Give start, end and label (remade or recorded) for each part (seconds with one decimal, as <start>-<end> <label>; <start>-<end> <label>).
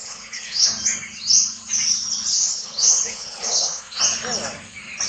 0.0-0.7 remade; 0.7-2.3 recorded; 2.3-4.0 remade; 4.0-5.1 recorded